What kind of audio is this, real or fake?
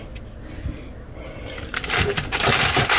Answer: real